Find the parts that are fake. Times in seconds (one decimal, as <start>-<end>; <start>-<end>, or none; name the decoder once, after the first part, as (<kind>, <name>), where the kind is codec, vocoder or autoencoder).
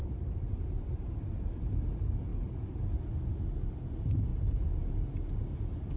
0.0-1.1 (vocoder, BigVGAN v2); 2.3-2.8